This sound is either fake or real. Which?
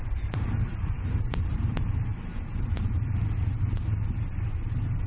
fake